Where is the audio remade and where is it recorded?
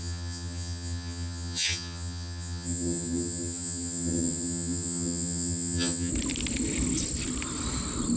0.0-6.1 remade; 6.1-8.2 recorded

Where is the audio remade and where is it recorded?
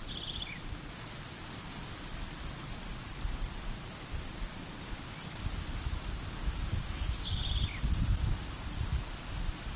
0.0-6.7 recorded; 6.7-7.4 remade; 7.4-9.8 recorded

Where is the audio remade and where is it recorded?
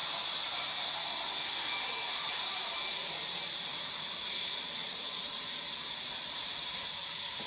0.0-2.3 recorded; 2.3-7.5 remade